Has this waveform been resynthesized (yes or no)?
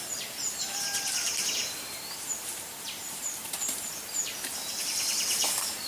yes